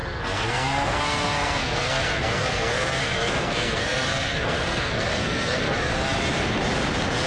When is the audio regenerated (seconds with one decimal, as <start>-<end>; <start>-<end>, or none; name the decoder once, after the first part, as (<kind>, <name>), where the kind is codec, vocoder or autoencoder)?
0.0-5.9 (codec, SNAC)